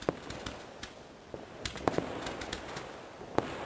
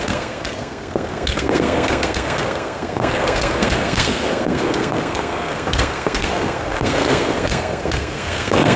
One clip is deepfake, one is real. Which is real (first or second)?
first